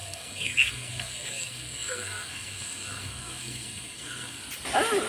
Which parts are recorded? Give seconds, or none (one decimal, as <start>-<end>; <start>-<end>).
4.4-5.1